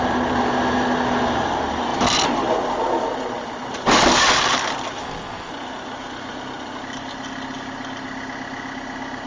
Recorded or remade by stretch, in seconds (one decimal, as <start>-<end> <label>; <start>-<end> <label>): 0.0-5.0 recorded; 5.0-5.5 remade; 5.5-9.3 recorded